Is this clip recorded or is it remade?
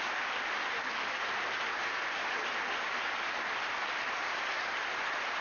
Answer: recorded